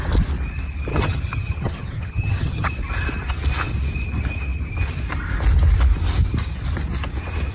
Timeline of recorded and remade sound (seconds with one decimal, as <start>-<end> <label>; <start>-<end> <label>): 0.0-0.9 recorded; 0.9-2.7 remade; 2.7-7.5 recorded